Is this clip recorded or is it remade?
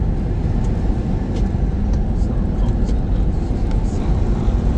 recorded